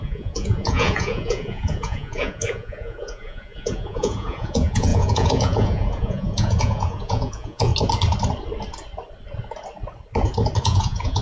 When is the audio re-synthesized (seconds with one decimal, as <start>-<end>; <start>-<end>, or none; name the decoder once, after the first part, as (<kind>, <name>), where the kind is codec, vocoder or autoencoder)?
0.0-7.7 (vocoder, Vocos); 10.6-11.2